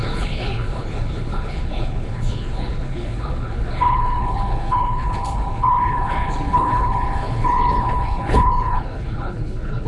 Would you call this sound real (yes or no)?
no